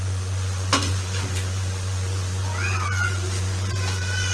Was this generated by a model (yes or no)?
yes